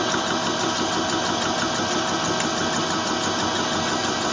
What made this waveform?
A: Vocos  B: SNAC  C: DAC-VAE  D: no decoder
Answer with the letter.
D